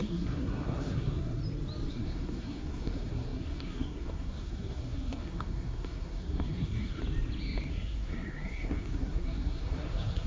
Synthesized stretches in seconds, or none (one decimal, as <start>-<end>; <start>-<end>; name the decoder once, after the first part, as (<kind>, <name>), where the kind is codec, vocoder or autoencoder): 0.0-1.4 (codec, SNAC); 1.9-7.0; 7.7-10.3